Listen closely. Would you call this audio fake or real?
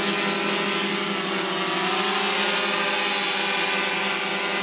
real